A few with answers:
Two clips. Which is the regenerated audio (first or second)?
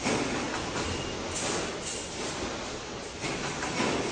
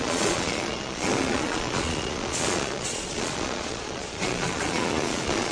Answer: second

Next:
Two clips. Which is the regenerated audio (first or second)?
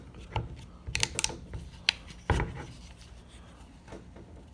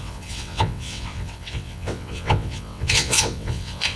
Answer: second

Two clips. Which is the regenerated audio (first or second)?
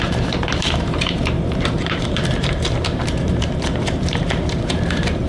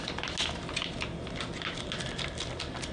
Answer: first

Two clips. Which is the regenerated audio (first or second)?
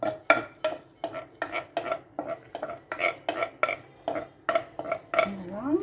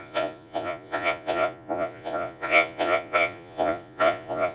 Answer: second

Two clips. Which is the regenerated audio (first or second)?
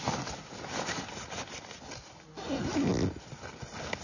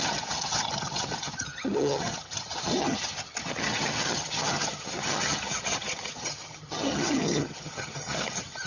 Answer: second